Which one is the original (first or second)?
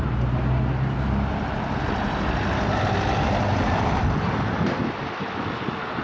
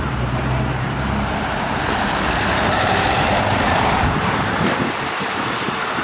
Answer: first